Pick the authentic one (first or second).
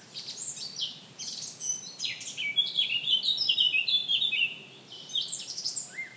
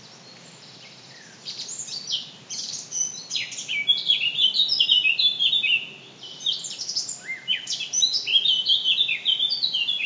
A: second